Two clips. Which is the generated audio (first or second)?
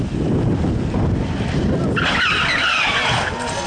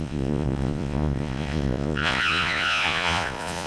second